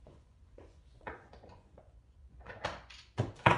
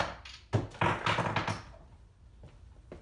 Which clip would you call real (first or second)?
second